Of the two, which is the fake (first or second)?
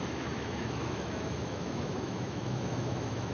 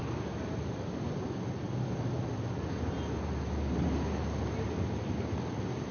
first